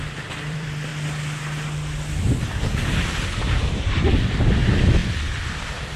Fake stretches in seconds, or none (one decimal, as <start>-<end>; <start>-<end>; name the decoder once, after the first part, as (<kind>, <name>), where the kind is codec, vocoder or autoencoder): 0.0-0.9 (vocoder, BigVGAN v2); 3.8-6.0